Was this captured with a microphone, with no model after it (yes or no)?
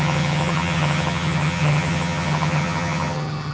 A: no